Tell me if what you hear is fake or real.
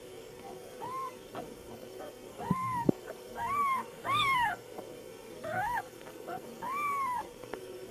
fake